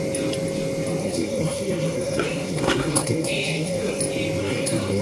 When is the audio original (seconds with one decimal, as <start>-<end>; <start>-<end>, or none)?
0.0-1.0; 4.0-4.4

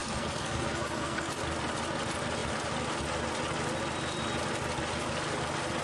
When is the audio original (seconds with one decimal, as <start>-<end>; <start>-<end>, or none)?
1.3-5.8

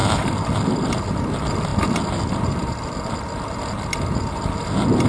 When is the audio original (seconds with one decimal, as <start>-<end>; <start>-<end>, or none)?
0.0-5.1

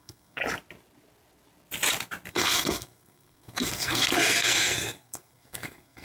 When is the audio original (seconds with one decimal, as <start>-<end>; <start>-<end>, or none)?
0.4-2.3

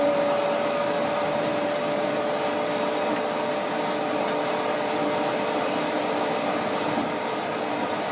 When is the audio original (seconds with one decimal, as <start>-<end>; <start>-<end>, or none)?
0.0-8.1